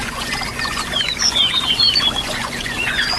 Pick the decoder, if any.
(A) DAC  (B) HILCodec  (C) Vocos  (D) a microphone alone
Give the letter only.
C